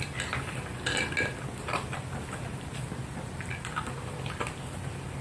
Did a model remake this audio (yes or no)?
no